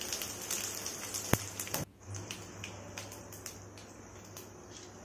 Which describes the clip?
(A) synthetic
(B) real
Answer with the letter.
B